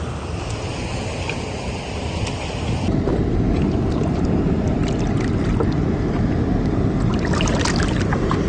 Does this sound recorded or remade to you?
recorded